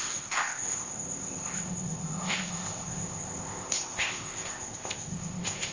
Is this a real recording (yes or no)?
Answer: no